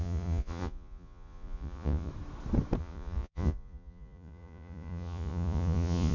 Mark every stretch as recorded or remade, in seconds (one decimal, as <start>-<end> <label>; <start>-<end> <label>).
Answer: 0.0-2.1 remade; 2.1-2.8 recorded; 2.8-6.1 remade